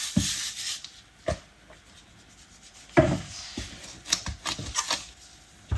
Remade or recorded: recorded